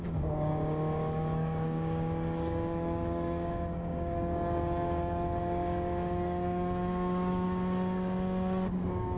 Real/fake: fake